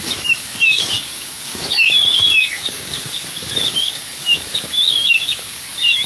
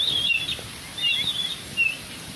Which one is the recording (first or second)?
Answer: second